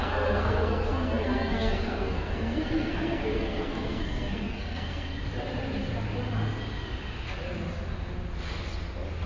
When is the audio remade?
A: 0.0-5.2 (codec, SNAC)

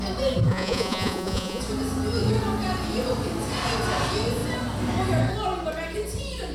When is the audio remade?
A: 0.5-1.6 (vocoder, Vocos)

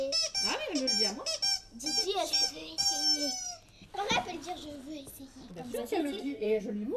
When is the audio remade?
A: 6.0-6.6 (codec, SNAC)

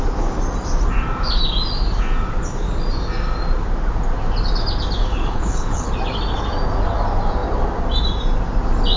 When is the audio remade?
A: 5.0-5.9 (codec, HILCodec)

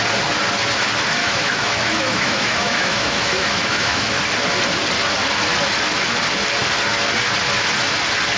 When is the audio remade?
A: 1.2-4.2 (autoencoder, DAC-VAE)

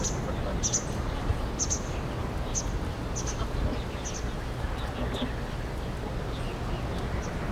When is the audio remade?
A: none

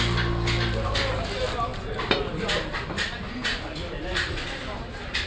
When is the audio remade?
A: none

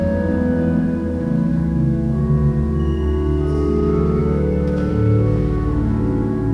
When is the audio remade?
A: 1.5-2.2 (codec, DAC); 4.2-4.9